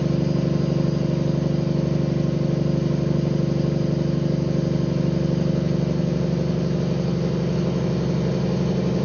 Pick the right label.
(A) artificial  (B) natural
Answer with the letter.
B